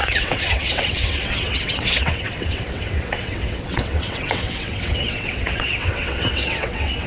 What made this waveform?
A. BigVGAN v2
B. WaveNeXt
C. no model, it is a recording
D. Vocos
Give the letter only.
B